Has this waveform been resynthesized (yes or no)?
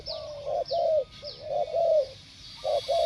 no